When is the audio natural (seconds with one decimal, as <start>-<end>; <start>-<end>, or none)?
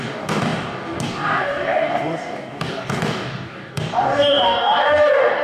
none